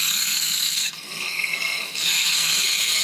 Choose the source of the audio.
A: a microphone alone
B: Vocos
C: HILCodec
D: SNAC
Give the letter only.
D